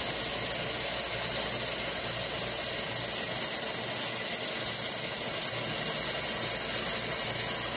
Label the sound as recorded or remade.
recorded